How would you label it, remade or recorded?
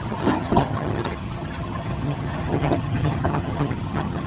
remade